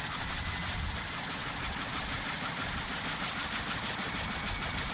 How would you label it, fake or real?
real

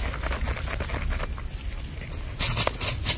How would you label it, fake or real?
real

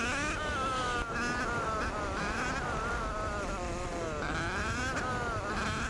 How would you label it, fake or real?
real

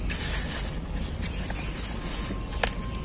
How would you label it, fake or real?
real